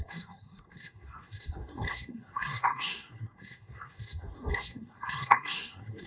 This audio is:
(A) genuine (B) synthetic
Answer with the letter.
B